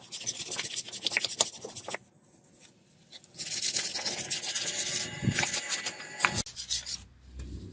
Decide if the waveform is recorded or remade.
recorded